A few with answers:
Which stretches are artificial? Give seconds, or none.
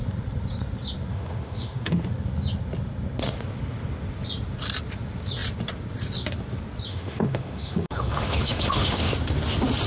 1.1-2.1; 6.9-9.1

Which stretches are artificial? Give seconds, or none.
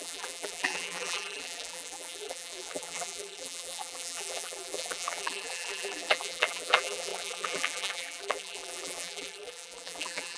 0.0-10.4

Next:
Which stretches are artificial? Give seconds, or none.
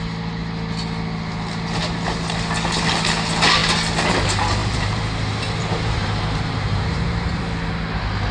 4.6-7.4